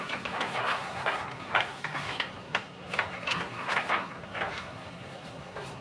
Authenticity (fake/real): fake